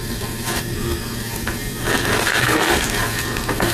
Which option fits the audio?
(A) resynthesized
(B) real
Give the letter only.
A